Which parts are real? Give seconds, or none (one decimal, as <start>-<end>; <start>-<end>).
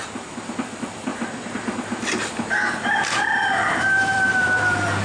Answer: none